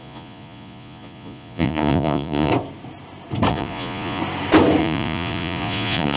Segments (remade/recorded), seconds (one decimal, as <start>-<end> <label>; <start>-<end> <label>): 0.0-2.5 remade; 2.5-3.5 recorded; 3.5-4.2 remade; 4.2-4.8 recorded; 4.8-6.2 remade